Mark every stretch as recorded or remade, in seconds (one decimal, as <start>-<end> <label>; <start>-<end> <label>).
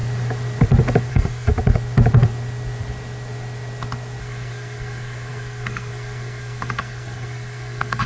0.0-1.1 recorded; 1.1-1.5 remade; 1.5-4.2 recorded; 4.2-8.1 remade